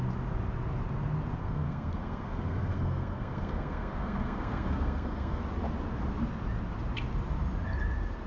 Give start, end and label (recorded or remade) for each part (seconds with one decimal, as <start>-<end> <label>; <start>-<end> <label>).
0.0-1.4 recorded; 1.4-5.4 remade; 5.4-8.3 recorded